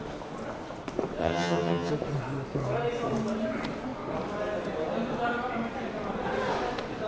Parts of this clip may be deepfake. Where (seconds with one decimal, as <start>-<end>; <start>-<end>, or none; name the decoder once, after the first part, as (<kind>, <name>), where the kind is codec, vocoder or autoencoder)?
1.2-1.9 (vocoder, HiFi-GAN)